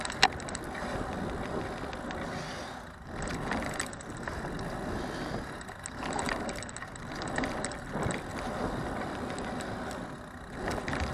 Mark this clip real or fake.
real